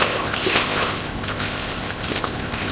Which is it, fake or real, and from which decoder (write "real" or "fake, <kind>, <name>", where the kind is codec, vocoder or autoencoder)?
fake, codec, ZipCodec